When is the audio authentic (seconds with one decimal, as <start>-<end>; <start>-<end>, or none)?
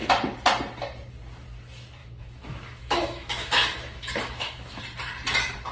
0.0-2.0; 4.8-5.7